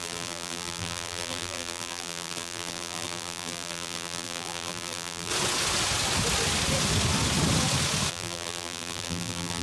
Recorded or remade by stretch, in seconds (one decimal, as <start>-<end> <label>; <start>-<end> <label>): 0.0-5.3 remade; 5.3-8.1 recorded; 8.1-9.6 remade

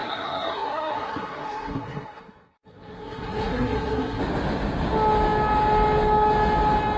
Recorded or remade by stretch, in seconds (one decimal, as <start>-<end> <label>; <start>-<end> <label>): 0.0-4.2 remade; 4.2-7.0 recorded

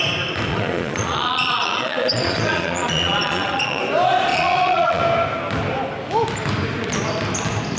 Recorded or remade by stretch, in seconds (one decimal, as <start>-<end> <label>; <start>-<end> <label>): 0.0-0.5 recorded; 0.5-3.8 remade; 3.8-4.3 recorded; 4.3-5.0 remade; 5.0-7.8 recorded

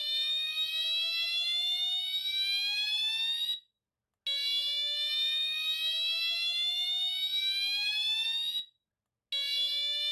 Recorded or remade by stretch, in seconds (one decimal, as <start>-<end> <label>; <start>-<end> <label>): 0.0-10.1 recorded